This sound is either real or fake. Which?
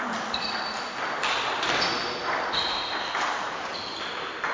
real